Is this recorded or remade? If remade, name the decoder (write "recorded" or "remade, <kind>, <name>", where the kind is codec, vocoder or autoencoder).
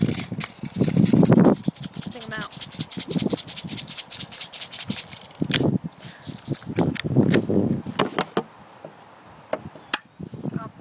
recorded